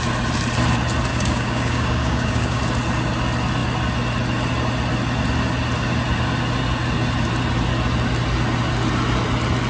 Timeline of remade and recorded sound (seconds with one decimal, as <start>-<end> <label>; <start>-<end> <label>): 0.0-1.1 recorded; 1.1-2.6 remade; 2.6-9.7 recorded